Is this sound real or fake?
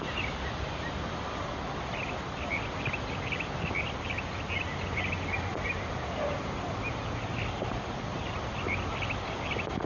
real